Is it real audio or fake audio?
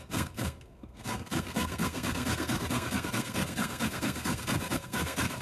fake